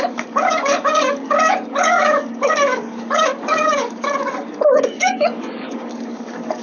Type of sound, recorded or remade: remade